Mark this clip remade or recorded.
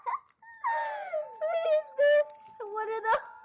recorded